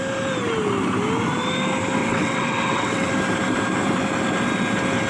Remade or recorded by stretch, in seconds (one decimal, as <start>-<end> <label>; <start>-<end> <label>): 0.0-2.0 recorded; 2.0-3.1 remade; 3.1-5.1 recorded